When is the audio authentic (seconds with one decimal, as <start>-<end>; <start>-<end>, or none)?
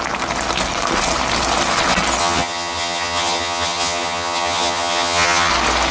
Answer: 0.0-2.2; 5.5-5.9